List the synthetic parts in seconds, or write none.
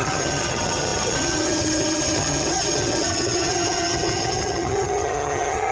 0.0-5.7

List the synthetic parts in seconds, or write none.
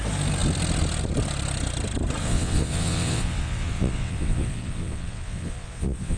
2.2-6.2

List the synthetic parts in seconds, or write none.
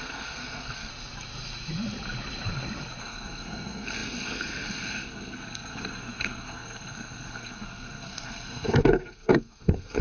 0.0-0.9; 3.0-10.0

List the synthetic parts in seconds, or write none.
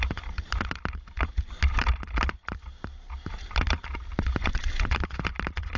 4.4-5.1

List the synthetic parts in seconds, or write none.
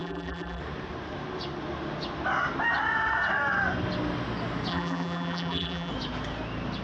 0.0-0.6; 4.7-5.9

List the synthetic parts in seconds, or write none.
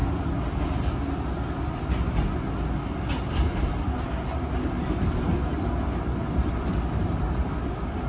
none